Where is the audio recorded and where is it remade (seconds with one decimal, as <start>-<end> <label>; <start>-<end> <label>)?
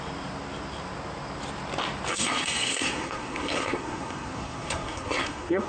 0.0-2.1 recorded; 2.1-5.7 remade